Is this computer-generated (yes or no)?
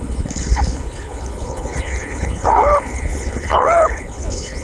yes